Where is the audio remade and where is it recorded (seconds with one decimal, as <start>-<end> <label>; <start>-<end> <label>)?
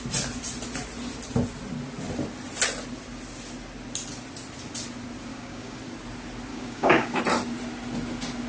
0.0-5.3 recorded; 5.3-5.8 remade; 5.8-6.5 recorded; 6.5-7.2 remade; 7.2-8.5 recorded